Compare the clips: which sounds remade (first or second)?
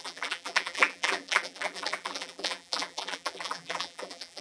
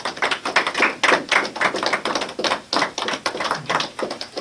first